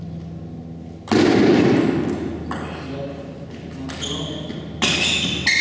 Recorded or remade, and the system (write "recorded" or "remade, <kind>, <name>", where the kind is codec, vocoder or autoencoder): recorded